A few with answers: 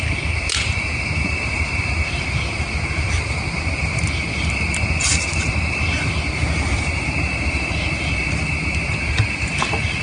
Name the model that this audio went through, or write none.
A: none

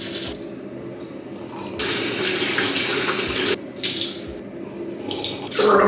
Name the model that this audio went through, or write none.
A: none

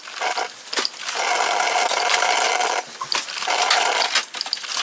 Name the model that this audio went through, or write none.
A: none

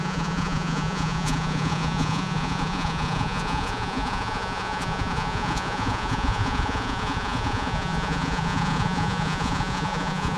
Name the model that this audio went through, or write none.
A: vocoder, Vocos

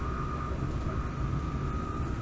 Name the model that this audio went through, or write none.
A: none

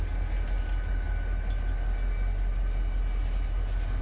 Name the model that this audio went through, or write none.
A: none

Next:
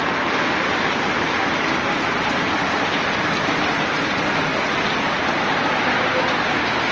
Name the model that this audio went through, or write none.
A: none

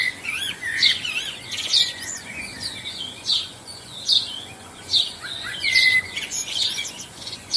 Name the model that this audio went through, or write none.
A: vocoder, Vocos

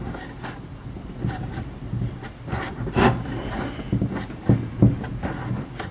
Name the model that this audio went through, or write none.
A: none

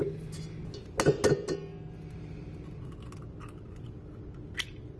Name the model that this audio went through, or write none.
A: none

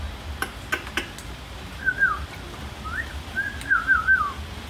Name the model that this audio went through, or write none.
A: none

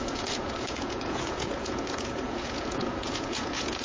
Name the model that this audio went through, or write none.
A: vocoder, Vocos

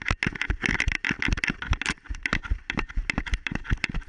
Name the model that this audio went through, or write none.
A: none